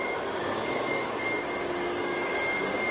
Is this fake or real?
fake